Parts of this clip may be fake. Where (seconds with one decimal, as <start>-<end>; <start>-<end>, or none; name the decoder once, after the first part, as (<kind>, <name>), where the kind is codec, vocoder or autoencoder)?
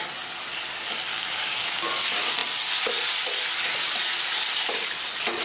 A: 1.1-1.9 (codec, DAC)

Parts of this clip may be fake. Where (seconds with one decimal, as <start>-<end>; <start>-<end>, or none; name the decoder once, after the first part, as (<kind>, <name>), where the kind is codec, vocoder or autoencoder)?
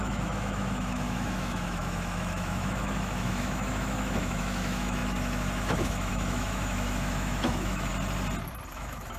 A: 0.0-7.9 (autoencoder, DAC-VAE); 8.7-9.2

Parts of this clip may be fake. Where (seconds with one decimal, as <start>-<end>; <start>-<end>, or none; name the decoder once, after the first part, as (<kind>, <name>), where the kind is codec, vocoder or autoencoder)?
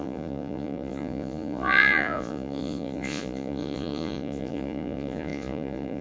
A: 0.0-6.0 (vocoder, Vocos)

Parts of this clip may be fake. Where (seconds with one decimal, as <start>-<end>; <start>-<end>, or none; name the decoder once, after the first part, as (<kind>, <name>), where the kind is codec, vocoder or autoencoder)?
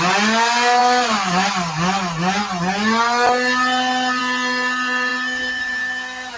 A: none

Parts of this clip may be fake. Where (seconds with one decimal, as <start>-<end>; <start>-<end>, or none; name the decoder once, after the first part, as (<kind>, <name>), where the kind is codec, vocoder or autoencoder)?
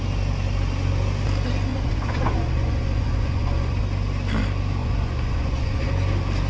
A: 1.7-3.8 (vocoder, Vocos); 4.8-5.9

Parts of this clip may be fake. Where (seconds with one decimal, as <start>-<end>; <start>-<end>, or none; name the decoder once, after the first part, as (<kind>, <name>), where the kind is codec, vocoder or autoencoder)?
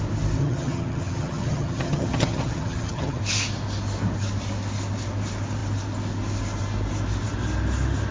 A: 0.4-3.2 (vocoder, HiFi-GAN)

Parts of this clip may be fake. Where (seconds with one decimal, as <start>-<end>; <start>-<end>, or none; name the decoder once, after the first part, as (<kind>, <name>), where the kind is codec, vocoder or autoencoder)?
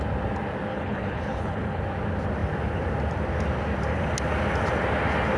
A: 0.7-1.8 (codec, HILCodec)